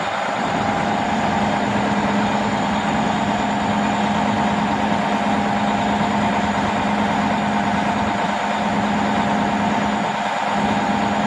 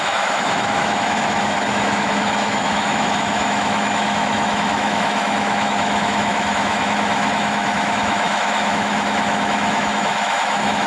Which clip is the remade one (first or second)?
second